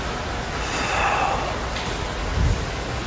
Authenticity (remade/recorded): recorded